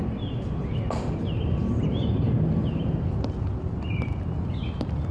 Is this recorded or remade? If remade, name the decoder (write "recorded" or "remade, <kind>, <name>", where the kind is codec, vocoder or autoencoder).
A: recorded